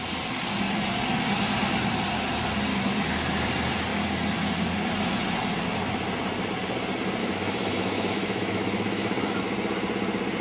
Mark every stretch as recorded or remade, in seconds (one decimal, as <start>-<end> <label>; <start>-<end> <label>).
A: 0.0-2.7 recorded; 2.7-3.4 remade; 3.4-7.2 recorded; 7.2-9.4 remade; 9.4-10.4 recorded